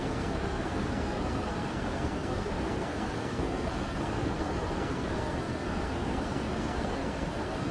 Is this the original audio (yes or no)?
no